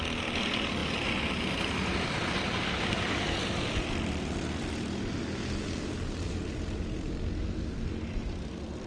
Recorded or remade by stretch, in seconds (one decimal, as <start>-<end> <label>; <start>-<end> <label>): 0.0-8.9 recorded